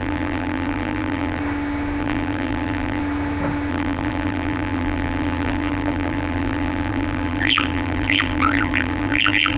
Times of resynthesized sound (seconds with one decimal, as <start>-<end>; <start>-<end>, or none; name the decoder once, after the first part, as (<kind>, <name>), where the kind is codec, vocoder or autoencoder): 0.0-1.4 (vocoder, BigVGAN v2); 2.0-3.0; 3.7-9.6

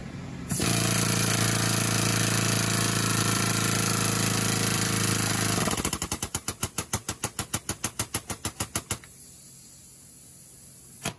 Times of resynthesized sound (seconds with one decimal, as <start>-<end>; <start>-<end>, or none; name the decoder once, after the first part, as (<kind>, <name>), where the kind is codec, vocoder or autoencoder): none